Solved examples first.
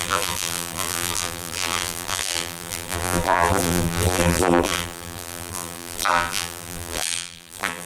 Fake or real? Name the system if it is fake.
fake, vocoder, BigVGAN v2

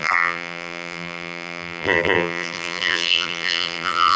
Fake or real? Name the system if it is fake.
fake, vocoder, BigVGAN v2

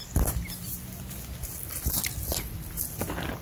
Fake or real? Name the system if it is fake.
real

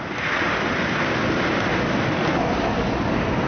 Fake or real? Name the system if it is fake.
real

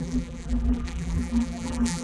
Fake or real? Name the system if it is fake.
fake, vocoder, BigVGAN v2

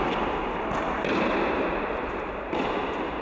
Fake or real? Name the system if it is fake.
real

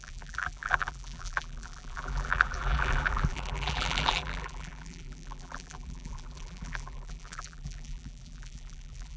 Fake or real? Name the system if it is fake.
fake, vocoder, BigVGAN v2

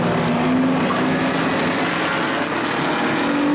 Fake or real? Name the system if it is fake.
real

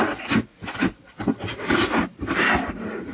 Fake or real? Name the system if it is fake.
real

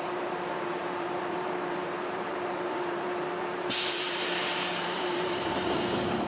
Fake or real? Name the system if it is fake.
fake, vocoder, BigVGAN v2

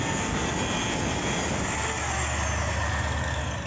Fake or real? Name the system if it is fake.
real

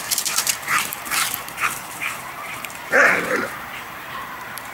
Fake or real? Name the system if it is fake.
fake, vocoder, BigVGAN v2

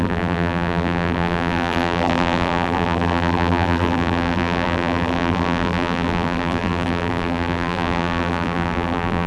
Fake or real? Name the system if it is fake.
fake, vocoder, BigVGAN v2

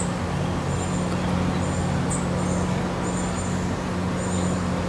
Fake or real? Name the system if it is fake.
real